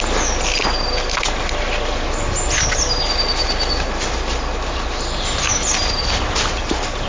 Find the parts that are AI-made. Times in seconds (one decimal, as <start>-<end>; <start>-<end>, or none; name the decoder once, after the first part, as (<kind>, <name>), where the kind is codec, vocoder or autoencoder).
none